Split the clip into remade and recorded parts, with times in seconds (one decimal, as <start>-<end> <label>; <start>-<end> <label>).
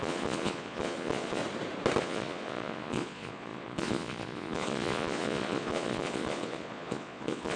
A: 0.0-1.4 remade; 1.4-2.0 recorded; 2.0-7.6 remade